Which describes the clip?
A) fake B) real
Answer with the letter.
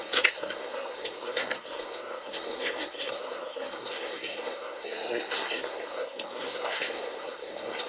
A